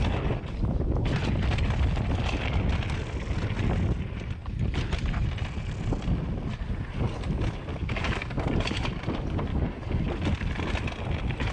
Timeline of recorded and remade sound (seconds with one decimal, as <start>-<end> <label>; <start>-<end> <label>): 0.0-7.7 recorded; 7.7-8.9 remade; 8.9-9.5 recorded; 9.5-10.0 remade; 10.0-11.5 recorded